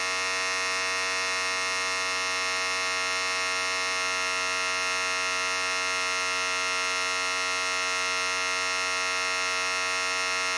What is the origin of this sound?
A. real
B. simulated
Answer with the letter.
A